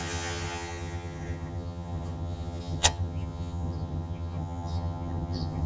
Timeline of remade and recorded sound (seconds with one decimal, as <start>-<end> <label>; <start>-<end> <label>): 0.0-5.7 remade

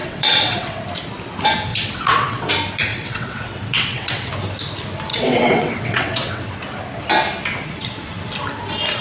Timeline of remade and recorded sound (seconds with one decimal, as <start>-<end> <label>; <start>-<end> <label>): 0.0-0.8 remade; 0.8-1.7 recorded; 1.7-2.5 remade; 2.5-2.9 recorded; 2.9-4.3 remade; 4.3-5.1 recorded; 5.1-6.6 remade; 6.6-9.0 recorded

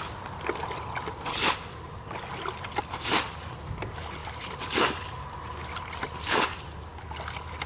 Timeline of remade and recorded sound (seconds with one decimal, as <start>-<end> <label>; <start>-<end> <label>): 0.0-4.2 recorded; 4.2-5.2 remade; 5.2-7.7 recorded

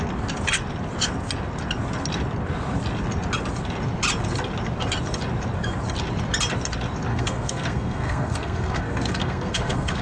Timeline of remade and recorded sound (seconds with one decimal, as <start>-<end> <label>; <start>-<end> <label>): 0.0-7.1 recorded; 7.1-10.0 remade

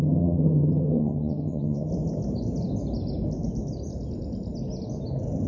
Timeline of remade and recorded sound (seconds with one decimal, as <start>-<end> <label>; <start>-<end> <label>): 0.0-1.9 remade; 1.9-5.5 recorded